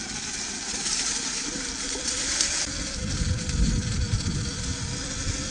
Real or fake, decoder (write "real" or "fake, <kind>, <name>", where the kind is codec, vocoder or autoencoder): real